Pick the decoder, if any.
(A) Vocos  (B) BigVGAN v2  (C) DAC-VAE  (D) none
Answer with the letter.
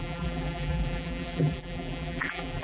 B